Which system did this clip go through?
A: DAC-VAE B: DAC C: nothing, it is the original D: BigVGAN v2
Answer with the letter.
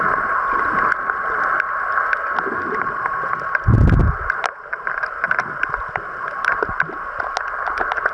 C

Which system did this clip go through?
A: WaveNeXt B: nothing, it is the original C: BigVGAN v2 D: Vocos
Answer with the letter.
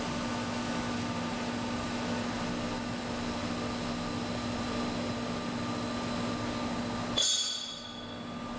B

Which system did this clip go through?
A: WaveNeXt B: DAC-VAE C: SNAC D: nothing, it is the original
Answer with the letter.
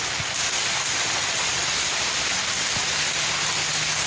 D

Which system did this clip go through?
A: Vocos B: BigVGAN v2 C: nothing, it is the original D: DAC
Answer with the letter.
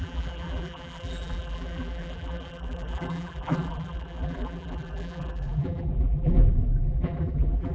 B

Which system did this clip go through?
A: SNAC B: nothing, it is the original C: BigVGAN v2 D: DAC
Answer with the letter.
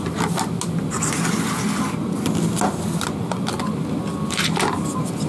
B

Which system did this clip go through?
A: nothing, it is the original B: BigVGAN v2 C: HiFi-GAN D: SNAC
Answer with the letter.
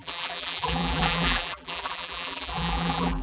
B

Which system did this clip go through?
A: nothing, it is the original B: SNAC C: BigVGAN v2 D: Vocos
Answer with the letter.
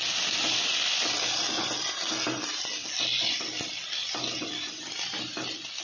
A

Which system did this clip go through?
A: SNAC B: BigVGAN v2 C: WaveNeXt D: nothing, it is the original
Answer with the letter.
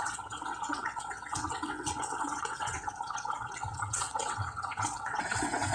C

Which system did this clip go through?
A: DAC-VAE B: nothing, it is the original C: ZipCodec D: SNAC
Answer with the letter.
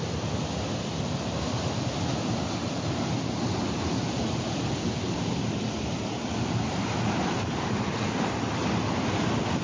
B